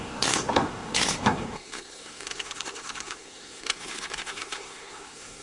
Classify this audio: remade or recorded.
remade